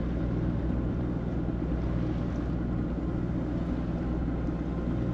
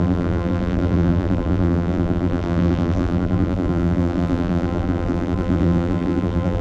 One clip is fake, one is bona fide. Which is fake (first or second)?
second